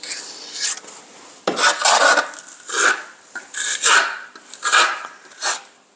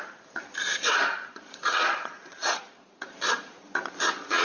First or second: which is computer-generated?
second